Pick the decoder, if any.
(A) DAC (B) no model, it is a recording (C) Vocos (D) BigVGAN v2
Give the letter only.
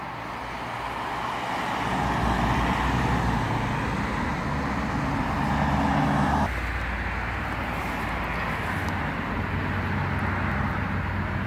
B